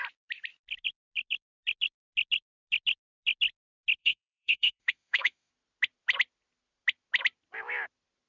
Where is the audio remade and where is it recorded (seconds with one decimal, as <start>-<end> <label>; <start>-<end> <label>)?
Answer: 0.0-4.0 recorded; 4.0-5.5 remade; 5.5-8.3 recorded